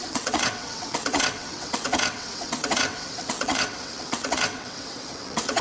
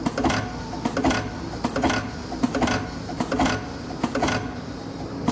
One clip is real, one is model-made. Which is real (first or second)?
second